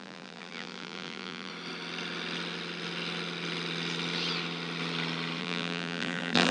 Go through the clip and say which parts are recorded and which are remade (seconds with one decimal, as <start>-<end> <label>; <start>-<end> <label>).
0.0-1.5 remade; 1.5-5.4 recorded; 5.4-6.5 remade